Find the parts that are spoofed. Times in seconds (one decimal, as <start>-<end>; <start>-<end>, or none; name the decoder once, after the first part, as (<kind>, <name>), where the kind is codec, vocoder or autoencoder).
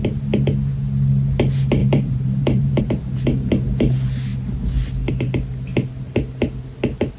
1.8-2.8 (vocoder, BigVGAN v2)